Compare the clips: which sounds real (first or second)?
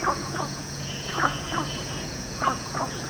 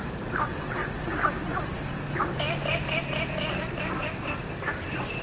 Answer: second